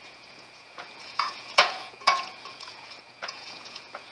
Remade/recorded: remade